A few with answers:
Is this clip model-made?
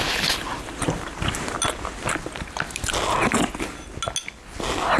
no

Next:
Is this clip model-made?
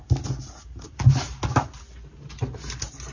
no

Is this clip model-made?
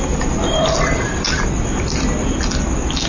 no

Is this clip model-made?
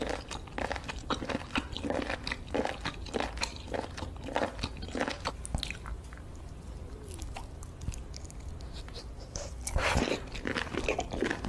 no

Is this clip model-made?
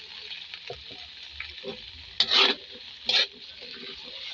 no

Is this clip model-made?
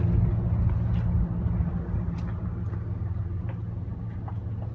no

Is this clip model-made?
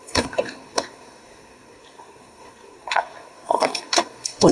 yes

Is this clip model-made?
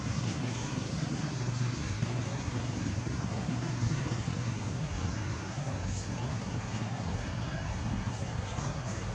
yes